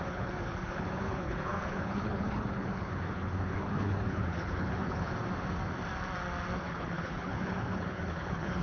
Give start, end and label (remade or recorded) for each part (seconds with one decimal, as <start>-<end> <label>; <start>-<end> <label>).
0.0-5.1 remade; 5.1-6.6 recorded; 6.6-8.6 remade